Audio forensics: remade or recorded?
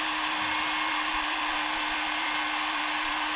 remade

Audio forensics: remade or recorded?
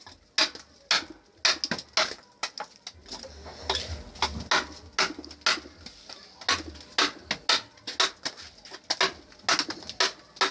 recorded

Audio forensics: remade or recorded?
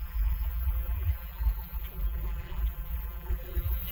remade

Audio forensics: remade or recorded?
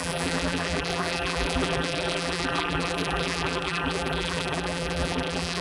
remade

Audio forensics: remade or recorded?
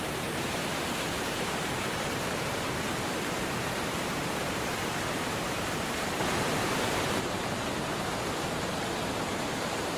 remade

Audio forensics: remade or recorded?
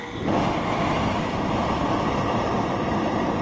recorded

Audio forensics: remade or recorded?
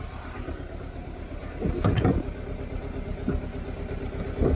recorded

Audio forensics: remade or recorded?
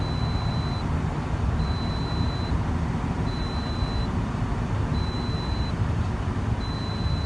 remade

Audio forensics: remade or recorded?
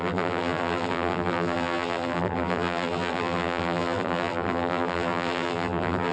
remade